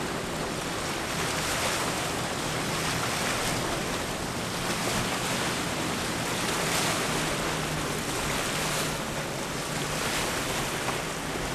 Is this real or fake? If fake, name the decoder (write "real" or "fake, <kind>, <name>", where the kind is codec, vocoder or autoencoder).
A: real